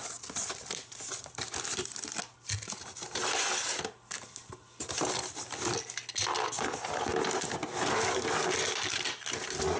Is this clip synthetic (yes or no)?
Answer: no